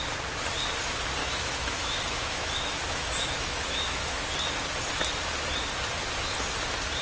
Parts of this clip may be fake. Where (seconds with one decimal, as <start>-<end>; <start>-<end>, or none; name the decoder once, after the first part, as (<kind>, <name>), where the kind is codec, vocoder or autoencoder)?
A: 1.2-4.3 (autoencoder, DAC-VAE)

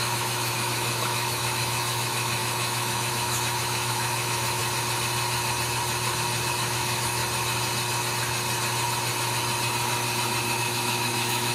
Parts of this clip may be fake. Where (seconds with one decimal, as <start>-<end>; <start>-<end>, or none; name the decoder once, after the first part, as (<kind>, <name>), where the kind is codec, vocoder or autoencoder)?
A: 0.0-4.6 (autoencoder, DAC-VAE); 6.5-7.2; 10.6-11.5